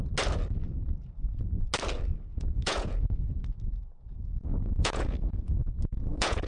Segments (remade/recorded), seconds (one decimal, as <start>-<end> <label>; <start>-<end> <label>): 0.0-2.3 recorded; 2.3-6.5 remade